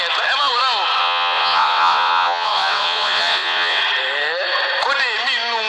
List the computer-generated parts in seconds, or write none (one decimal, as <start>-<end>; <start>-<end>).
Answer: 1.0-3.8